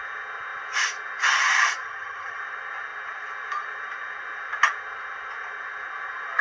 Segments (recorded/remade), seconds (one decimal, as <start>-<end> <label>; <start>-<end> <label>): 0.0-1.8 recorded; 1.8-2.4 remade; 2.4-6.4 recorded